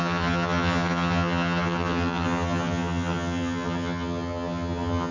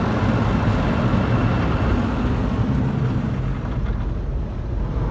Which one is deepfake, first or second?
first